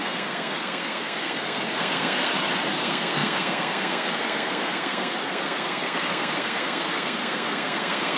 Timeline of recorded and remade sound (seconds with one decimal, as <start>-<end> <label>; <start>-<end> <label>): 0.0-2.3 remade; 2.3-2.8 recorded; 2.8-8.2 remade